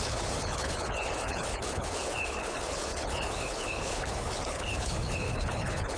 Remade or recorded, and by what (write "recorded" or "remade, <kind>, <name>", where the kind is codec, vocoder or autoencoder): remade, codec, HILCodec